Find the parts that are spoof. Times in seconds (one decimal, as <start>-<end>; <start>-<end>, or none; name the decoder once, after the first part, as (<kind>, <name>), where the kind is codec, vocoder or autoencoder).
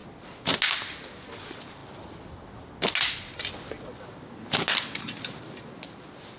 none